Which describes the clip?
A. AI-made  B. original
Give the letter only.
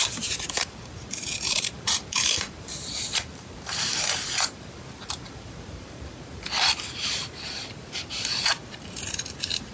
A